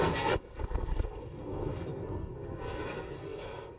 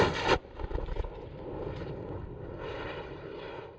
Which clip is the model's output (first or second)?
first